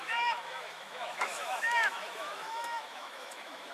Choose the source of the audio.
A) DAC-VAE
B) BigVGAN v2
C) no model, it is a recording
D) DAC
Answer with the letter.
A